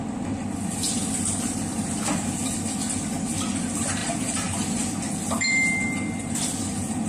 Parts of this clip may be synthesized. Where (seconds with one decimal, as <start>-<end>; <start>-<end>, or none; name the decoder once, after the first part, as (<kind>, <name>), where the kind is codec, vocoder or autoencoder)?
4.0-4.8 (vocoder, BigVGAN v2)